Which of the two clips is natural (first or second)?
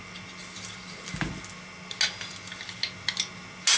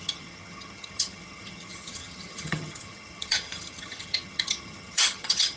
first